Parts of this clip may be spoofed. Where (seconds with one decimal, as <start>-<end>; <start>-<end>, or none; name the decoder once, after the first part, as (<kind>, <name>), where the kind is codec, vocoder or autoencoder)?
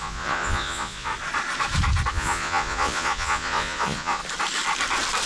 0.0-1.1 (vocoder, Vocos); 2.1-4.2